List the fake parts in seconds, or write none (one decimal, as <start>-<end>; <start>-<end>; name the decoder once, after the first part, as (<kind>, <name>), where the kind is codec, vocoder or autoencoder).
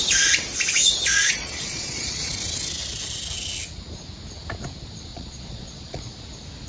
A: 1.1-2.3 (vocoder, Vocos); 5.1-6.1